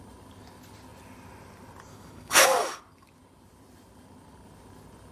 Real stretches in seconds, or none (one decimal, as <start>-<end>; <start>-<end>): 0.0-1.9; 2.8-5.1